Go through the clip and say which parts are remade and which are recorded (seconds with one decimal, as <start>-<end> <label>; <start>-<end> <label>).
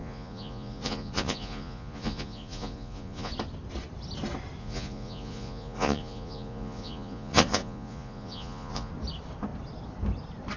0.0-3.3 remade; 3.3-4.6 recorded; 4.6-8.9 remade; 8.9-10.6 recorded